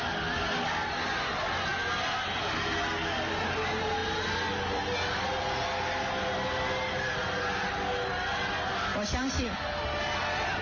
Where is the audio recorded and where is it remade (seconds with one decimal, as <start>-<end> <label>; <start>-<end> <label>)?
0.0-10.6 recorded